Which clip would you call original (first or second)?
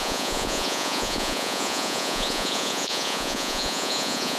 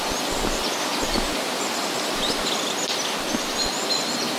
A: second